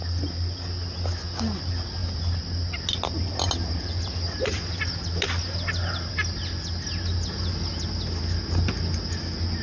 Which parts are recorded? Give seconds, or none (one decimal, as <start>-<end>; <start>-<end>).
0.0-9.6